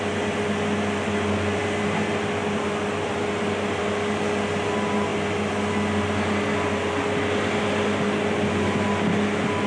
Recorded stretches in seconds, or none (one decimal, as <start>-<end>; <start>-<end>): 0.0-9.7

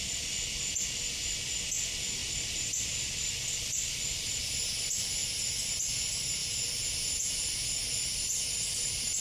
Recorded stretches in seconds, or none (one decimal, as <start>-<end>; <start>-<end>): 0.0-2.2; 4.4-5.2; 5.7-6.4; 6.9-9.2

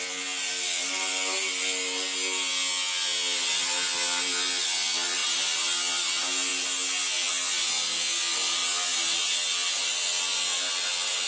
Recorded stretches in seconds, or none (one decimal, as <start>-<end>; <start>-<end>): 0.0-11.3

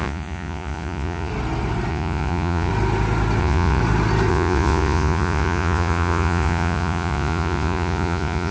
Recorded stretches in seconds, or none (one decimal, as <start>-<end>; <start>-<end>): 1.3-1.9; 2.7-3.4; 3.8-4.3

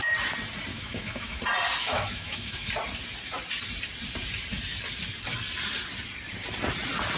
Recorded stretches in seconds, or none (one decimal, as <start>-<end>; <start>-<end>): 0.0-0.7; 1.4-1.8; 2.7-7.2